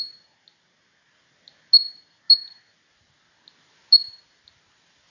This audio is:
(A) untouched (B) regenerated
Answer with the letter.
A